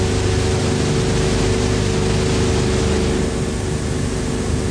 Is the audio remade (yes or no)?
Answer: no